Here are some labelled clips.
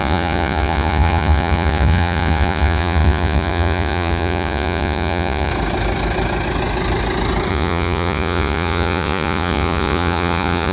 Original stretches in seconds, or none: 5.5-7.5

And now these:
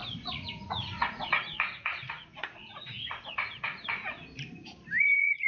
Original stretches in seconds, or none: 4.2-5.0